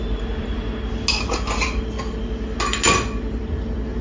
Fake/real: real